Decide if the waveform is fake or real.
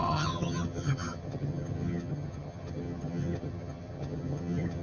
fake